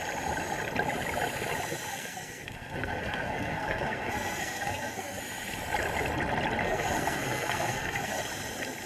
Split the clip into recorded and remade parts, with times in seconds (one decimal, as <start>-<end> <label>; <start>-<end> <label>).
0.0-1.9 recorded; 1.9-5.2 remade; 5.2-6.6 recorded; 6.6-8.2 remade; 8.2-8.9 recorded